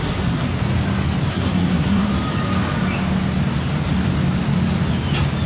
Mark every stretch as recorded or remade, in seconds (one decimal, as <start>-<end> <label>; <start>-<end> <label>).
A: 0.0-0.5 remade; 0.5-1.3 recorded; 1.3-2.1 remade; 2.1-5.5 recorded